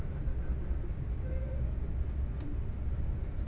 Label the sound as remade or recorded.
recorded